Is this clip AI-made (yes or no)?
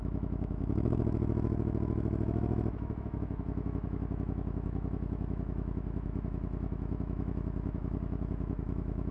yes